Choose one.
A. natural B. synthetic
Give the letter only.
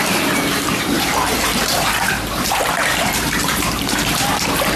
B